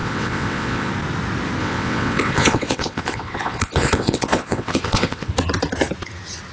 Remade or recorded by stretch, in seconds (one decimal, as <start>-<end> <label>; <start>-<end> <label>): 0.0-0.9 remade; 0.9-1.6 recorded; 1.6-5.3 remade; 5.3-6.5 recorded